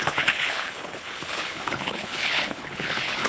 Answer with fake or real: fake